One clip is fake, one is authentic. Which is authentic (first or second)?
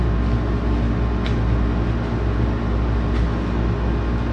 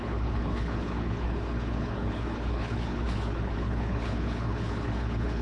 first